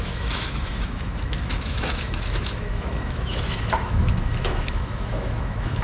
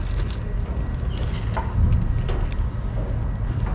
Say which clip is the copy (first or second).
first